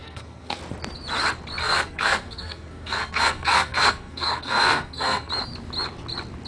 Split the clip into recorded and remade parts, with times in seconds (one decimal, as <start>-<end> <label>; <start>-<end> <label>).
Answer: 0.0-0.6 remade; 0.6-1.6 recorded; 1.6-5.3 remade; 5.3-6.5 recorded